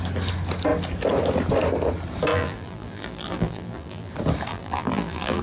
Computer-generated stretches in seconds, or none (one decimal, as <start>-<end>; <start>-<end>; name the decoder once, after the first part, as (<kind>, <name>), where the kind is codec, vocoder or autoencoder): 2.3-4.1 (vocoder, BigVGAN v2); 4.5-5.4